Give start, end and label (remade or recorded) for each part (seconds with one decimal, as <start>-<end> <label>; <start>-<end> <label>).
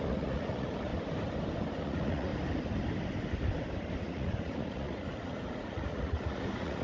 0.0-0.9 remade; 0.9-1.8 recorded; 1.8-2.3 remade; 2.3-4.0 recorded; 4.0-6.8 remade